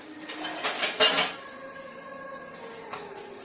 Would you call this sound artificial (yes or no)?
no